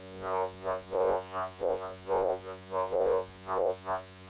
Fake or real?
fake